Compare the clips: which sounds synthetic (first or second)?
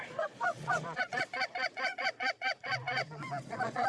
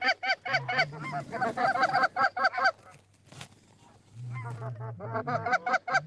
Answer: first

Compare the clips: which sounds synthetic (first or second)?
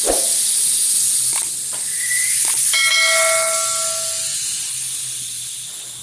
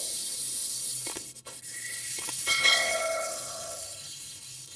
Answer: second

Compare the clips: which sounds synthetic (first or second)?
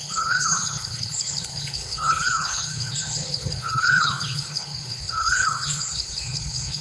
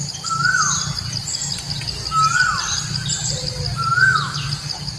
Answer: first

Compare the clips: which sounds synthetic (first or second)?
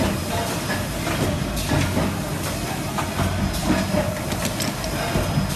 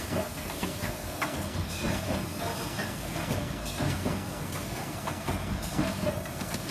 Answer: second